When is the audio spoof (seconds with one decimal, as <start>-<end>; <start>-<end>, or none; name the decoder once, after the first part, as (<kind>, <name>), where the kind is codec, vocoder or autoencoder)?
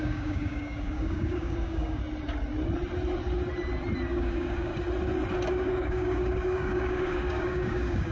0.0-2.0 (codec, DAC); 4.1-4.7; 5.5-8.1